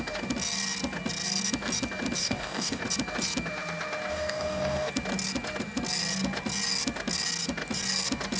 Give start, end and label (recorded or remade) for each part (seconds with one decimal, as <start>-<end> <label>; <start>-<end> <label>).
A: 0.0-2.2 recorded; 2.2-2.8 remade; 2.8-4.1 recorded; 4.1-4.9 remade; 4.9-8.4 recorded